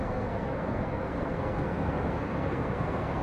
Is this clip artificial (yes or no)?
yes